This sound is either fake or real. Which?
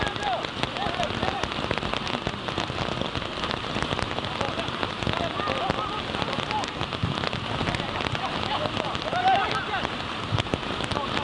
real